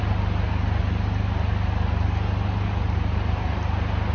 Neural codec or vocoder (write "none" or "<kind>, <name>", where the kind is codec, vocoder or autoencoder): none